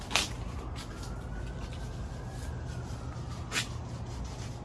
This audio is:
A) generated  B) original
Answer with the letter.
B